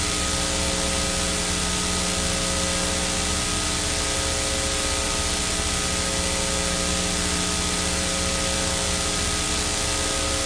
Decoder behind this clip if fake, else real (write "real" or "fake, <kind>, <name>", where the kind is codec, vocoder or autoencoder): real